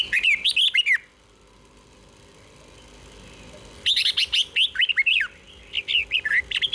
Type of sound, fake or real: real